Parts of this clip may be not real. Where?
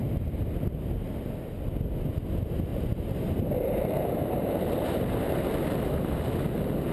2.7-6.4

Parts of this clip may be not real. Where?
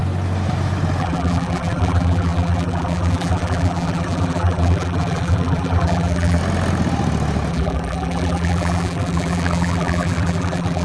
1.0-6.4; 7.5-10.8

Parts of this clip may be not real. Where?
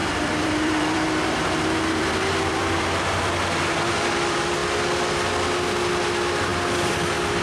0.0-3.4; 6.5-7.4